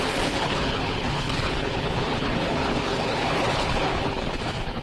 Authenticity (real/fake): fake